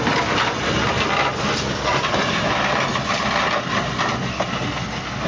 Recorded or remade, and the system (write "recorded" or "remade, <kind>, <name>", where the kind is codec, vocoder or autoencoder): recorded